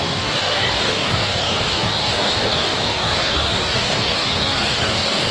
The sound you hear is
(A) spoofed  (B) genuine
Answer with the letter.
A